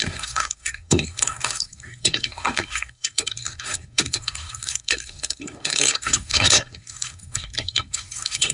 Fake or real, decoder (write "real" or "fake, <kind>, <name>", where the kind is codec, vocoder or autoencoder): fake, codec, SNAC